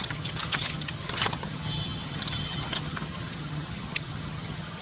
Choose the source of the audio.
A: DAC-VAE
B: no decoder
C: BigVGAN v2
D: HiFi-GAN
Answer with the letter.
D